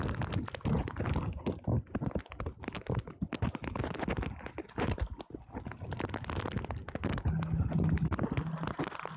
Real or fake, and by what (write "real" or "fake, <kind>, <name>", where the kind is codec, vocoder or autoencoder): real